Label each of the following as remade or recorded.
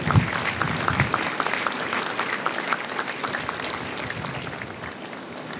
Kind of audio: recorded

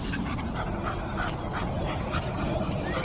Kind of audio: recorded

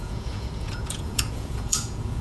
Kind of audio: remade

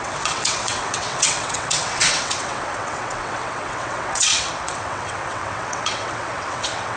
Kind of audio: remade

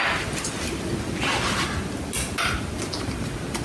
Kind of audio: recorded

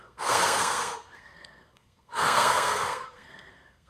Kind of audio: remade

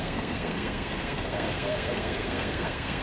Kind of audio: remade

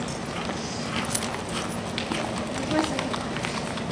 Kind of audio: recorded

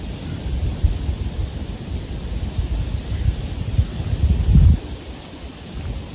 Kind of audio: recorded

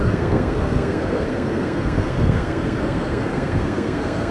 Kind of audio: remade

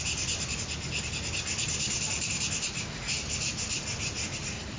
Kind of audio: recorded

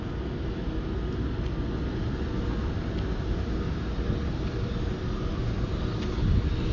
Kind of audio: recorded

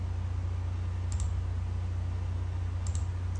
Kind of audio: recorded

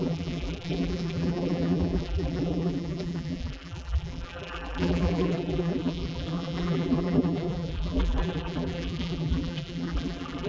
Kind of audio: remade